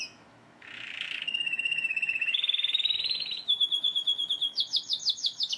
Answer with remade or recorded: remade